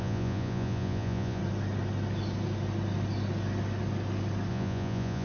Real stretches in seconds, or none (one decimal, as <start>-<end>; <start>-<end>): 1.4-4.5